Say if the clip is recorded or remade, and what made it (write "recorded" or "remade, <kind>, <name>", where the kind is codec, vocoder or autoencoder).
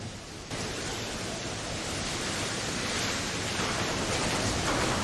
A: remade, vocoder, BigVGAN v2